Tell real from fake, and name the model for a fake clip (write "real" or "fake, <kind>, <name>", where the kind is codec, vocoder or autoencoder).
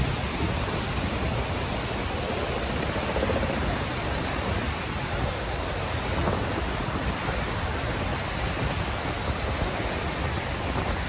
real